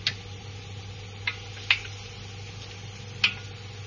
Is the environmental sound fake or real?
real